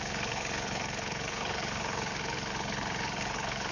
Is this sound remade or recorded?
remade